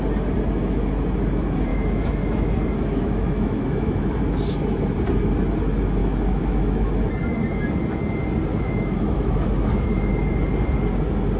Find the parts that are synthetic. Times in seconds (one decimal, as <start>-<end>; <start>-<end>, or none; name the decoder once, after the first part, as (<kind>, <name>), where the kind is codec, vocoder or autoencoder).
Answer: 1.7-4.2 (autoencoder, DAC-VAE); 6.0-6.9; 8.5-10.1